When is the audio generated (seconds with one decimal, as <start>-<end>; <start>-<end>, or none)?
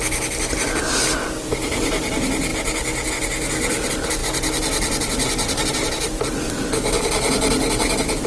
none